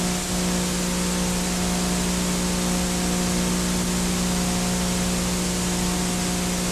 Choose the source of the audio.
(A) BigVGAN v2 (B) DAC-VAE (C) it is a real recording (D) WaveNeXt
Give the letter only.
C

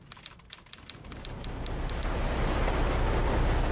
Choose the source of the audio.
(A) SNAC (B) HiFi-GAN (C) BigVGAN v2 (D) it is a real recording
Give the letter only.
D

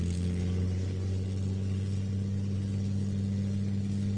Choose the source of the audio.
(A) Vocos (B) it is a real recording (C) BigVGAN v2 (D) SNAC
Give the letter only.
B